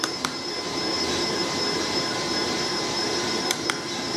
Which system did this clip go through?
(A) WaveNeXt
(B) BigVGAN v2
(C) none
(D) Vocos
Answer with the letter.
B